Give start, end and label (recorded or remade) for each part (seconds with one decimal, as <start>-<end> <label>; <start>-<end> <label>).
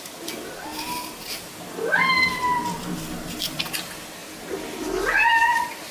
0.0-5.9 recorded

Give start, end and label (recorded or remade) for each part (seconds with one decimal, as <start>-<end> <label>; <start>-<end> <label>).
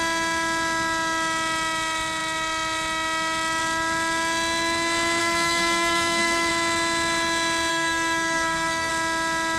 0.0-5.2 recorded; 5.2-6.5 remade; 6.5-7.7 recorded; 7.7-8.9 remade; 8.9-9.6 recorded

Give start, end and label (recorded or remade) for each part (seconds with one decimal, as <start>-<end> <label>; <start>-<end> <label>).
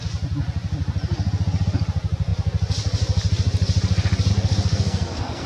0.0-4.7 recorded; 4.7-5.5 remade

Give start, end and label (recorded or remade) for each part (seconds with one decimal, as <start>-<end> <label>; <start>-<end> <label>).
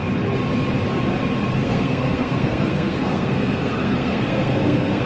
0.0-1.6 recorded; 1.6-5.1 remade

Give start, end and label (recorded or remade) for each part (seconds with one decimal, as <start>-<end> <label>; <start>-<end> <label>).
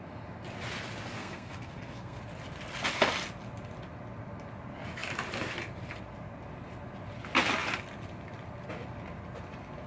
0.0-1.2 recorded; 1.2-2.2 remade; 2.2-9.9 recorded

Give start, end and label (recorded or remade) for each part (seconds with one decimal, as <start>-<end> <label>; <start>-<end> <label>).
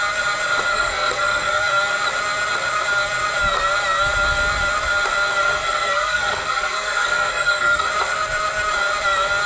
0.0-0.7 recorded; 0.7-1.7 remade; 1.7-5.4 recorded; 5.4-7.9 remade; 7.9-9.5 recorded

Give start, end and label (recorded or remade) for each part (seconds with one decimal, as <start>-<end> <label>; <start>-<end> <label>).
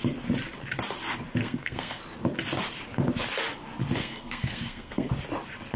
0.0-1.4 recorded; 1.4-2.0 remade; 2.0-4.0 recorded; 4.0-5.1 remade; 5.1-5.8 recorded